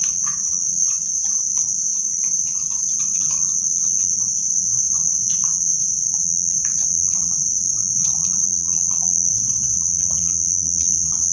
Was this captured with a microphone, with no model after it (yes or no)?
no